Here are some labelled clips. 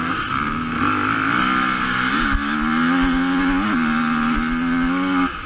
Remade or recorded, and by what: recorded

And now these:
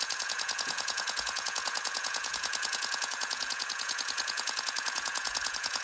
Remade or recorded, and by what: remade, vocoder, Vocos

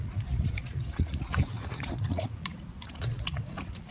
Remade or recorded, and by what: remade, vocoder, Vocos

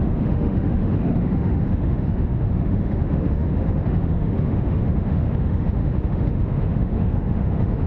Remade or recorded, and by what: remade, autoencoder, DAC-VAE